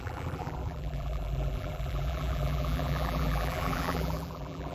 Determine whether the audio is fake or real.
fake